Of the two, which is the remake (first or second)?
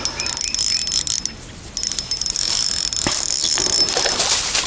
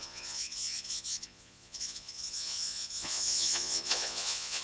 second